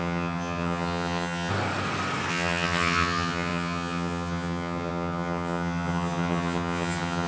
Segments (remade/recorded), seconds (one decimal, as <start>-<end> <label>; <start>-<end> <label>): 0.0-1.5 remade; 1.5-2.3 recorded; 2.3-7.3 remade